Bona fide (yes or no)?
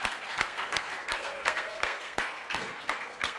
no